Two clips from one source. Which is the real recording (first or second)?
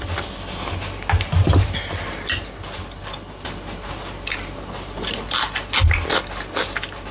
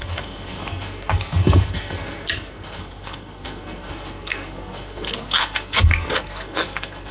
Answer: first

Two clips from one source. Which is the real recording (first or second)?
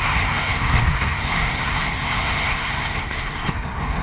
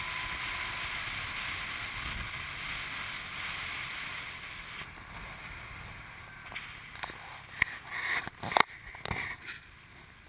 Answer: second